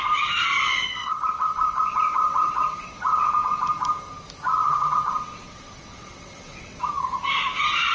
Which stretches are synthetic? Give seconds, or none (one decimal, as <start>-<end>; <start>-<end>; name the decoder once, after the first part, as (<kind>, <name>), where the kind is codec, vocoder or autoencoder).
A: 0.9-3.3 (vocoder, WaveNeXt); 4.6-6.9